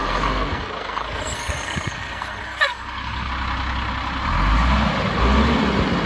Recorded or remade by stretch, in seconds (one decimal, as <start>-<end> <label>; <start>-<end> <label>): 0.0-3.3 remade; 3.3-6.1 recorded